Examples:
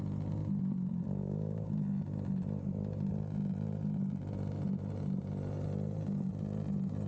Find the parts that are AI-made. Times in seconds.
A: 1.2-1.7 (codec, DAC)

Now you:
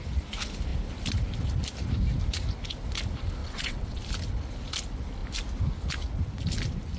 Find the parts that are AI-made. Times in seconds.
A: 3.4-4.0 (vocoder, WaveNeXt)

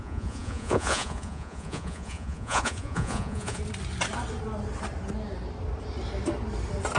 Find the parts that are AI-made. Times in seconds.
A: 0.0-3.6 (vocoder, Vocos)